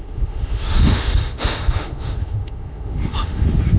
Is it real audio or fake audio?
fake